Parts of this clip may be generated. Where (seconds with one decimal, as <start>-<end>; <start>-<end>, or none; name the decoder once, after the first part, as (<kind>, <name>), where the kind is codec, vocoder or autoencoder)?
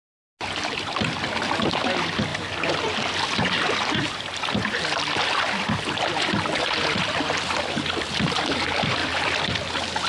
none